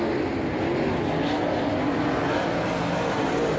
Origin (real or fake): real